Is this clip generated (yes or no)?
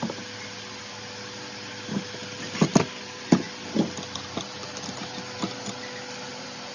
no